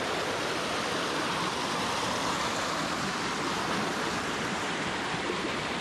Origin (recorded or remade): recorded